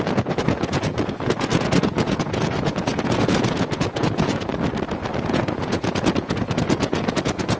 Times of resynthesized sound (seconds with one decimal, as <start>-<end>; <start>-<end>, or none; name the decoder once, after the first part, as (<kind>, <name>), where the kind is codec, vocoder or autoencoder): 0.0-4.5 (vocoder, Vocos); 5.2-7.6